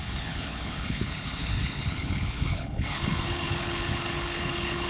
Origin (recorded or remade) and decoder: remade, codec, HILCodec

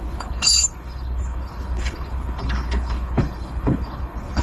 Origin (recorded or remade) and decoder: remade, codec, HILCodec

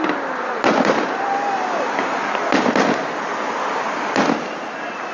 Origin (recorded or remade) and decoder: recorded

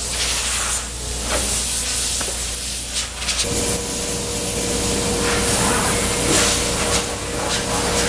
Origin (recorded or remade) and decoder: recorded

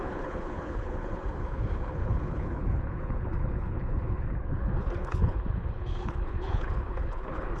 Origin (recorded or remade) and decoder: remade, codec, HILCodec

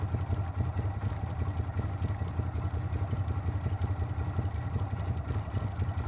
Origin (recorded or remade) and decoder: recorded